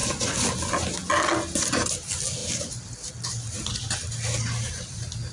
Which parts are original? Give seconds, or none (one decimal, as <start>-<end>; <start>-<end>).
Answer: 0.0-5.3